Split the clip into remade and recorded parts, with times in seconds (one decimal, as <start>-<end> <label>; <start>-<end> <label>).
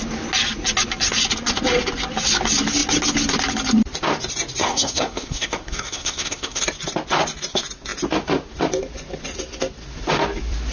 0.0-4.6 recorded; 4.6-6.6 remade; 6.6-10.7 recorded